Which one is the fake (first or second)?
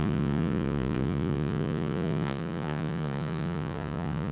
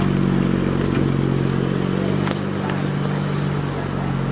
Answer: first